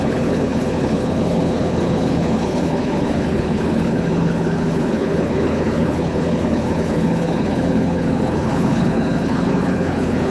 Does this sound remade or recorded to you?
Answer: remade